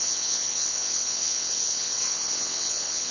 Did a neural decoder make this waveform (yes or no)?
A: yes